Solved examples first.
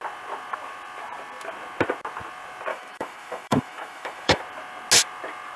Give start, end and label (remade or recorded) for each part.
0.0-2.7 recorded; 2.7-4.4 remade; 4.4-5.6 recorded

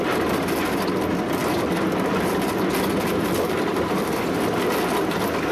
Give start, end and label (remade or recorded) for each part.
0.0-5.5 recorded

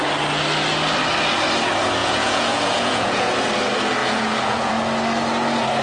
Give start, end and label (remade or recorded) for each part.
0.0-2.0 recorded; 2.0-3.5 remade; 3.5-4.0 recorded; 4.0-4.7 remade; 4.7-5.8 recorded

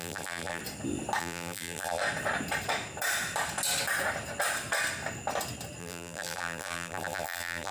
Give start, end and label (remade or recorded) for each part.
0.0-0.6 remade; 0.6-1.2 recorded; 1.2-2.0 remade; 2.0-5.8 recorded; 5.8-7.7 remade